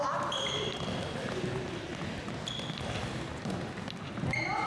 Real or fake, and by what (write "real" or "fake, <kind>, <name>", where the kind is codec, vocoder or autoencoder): real